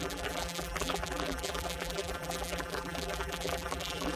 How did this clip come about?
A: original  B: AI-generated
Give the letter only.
B